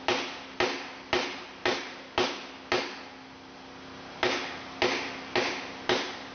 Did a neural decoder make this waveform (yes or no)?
no